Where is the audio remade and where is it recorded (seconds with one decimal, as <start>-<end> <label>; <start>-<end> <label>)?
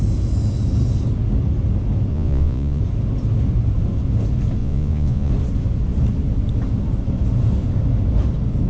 0.0-2.1 recorded; 2.1-2.8 remade; 2.8-4.6 recorded; 4.6-5.3 remade; 5.3-8.7 recorded